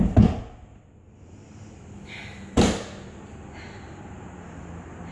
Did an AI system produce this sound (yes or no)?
no